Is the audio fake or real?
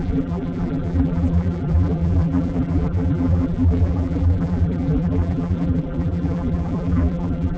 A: fake